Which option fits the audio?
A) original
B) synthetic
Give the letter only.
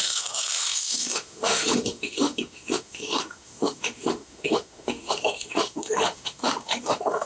B